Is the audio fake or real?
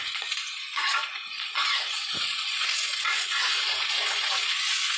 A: fake